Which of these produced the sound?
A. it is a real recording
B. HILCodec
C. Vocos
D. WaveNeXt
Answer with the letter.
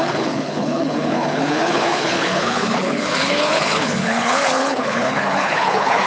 B